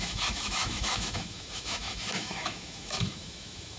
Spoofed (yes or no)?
yes